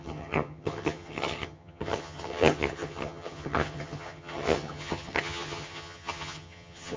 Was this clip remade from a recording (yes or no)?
yes